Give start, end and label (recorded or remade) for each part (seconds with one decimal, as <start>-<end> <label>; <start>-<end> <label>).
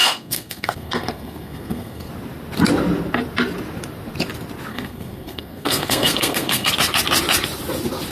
0.0-2.1 remade; 2.1-4.7 recorded; 4.7-6.7 remade; 6.7-8.1 recorded